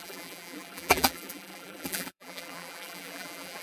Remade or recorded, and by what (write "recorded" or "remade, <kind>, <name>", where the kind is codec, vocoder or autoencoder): remade, vocoder, BigVGAN v2